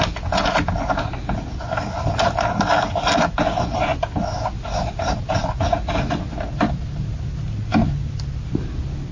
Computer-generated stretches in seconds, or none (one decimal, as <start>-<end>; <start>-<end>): none